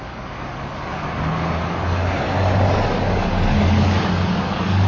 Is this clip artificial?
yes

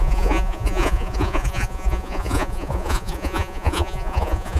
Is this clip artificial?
yes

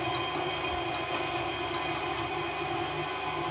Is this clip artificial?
no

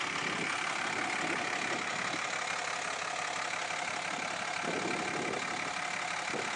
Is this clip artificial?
no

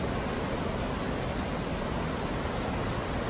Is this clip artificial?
no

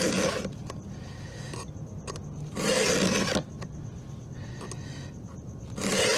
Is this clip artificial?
no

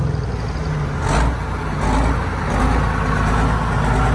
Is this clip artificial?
no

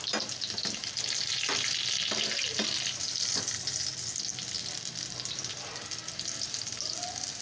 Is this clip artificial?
no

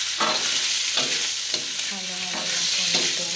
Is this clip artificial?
no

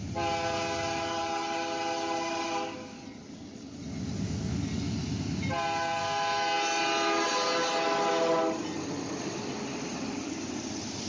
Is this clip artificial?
no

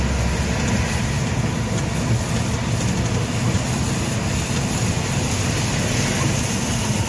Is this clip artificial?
no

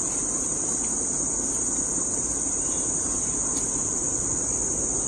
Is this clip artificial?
no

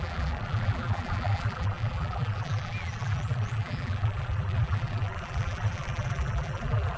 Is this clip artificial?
yes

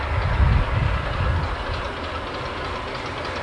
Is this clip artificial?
no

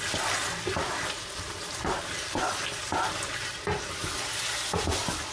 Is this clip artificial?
no